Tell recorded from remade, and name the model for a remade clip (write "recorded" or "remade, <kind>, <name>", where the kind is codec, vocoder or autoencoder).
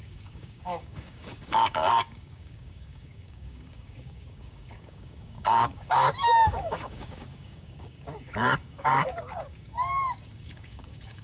remade, codec, DAC